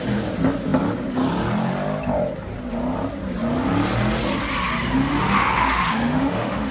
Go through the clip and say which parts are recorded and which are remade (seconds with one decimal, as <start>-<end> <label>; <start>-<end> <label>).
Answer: 0.0-5.0 recorded; 5.0-6.7 remade